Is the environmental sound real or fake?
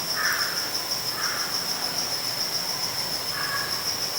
real